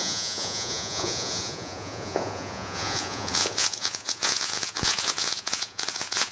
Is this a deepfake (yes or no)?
yes